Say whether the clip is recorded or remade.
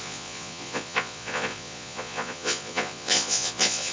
remade